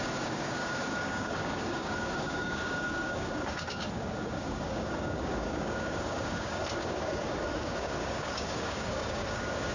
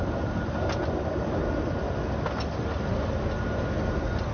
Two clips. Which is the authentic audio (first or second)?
second